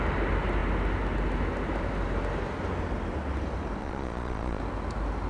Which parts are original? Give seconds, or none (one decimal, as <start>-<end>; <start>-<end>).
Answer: 0.0-3.8; 4.6-5.3